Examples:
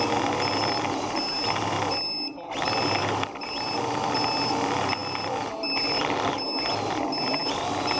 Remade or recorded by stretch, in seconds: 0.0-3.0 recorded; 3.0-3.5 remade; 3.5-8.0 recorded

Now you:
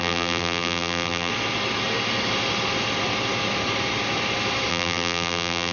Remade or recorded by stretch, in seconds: 0.0-1.3 remade; 1.3-4.7 recorded; 4.7-5.7 remade

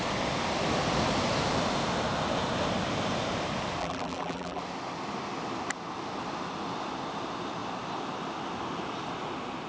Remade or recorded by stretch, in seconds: 0.0-3.8 recorded; 3.8-4.6 remade; 4.6-9.7 recorded